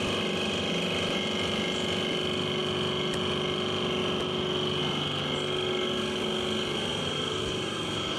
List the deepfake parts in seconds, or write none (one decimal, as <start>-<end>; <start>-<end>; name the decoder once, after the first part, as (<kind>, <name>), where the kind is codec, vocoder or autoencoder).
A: 6.9-8.2 (vocoder, BigVGAN v2)

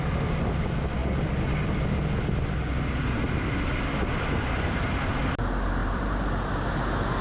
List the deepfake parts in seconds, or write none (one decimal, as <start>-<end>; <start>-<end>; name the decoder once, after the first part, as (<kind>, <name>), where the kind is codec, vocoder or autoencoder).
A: 5.8-6.5 (vocoder, BigVGAN v2)

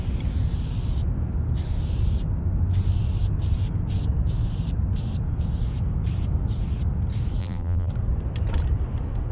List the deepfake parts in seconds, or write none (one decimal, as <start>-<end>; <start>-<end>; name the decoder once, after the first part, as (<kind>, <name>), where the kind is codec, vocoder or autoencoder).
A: 7.4-7.9 (vocoder, BigVGAN v2)

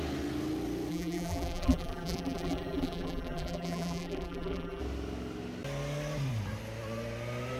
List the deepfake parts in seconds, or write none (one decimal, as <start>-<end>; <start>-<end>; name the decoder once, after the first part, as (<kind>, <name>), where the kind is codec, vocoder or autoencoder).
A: 0.9-4.8 (vocoder, BigVGAN v2)

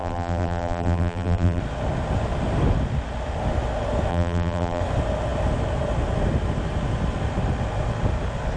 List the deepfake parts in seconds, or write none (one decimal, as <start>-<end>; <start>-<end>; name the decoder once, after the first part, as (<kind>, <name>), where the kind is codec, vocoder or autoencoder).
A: 0.0-1.6 (vocoder, BigVGAN v2); 4.1-4.8

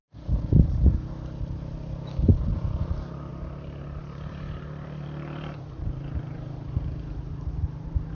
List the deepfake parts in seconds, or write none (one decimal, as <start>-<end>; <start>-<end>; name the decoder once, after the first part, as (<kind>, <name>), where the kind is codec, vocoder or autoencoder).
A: 3.3-8.1 (vocoder, BigVGAN v2)